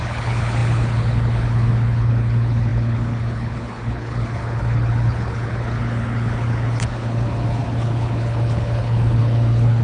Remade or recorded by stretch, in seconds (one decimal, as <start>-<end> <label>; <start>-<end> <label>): 0.0-9.8 remade